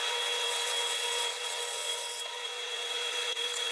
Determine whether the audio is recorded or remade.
remade